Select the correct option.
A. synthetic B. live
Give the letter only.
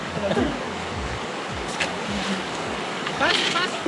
A